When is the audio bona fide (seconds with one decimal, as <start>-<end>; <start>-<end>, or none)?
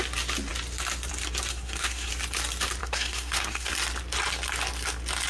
0.0-1.5; 2.1-2.8; 3.7-5.3